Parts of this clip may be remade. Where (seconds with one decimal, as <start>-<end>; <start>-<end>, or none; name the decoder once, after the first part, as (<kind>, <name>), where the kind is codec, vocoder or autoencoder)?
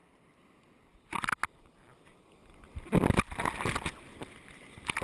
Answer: none